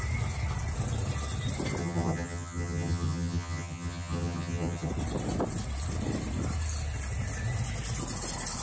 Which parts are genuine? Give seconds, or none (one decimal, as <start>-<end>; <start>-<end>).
0.0-1.8; 4.9-8.6